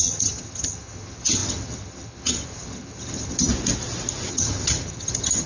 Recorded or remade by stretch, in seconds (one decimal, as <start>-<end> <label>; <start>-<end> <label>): 0.0-3.5 remade; 3.5-4.3 recorded; 4.3-5.5 remade